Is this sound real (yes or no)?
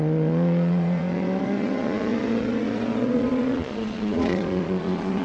no